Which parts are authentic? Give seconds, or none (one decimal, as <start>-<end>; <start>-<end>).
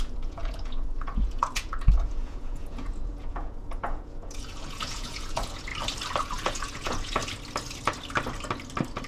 5.7-6.2; 7.2-9.1